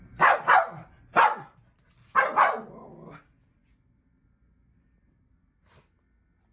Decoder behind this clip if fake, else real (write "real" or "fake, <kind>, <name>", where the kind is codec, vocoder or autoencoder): real